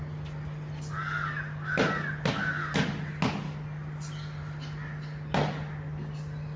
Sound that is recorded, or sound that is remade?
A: recorded